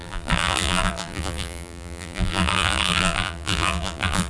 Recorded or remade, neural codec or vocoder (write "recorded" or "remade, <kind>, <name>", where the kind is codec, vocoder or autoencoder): remade, vocoder, BigVGAN v2